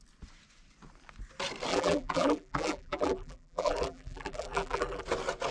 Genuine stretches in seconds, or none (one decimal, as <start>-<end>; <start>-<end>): 0.0-1.7; 5.0-5.5